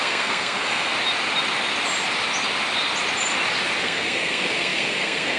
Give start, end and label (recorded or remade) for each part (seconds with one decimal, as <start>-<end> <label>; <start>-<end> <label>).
0.0-0.9 remade; 0.9-3.8 recorded; 3.8-5.4 remade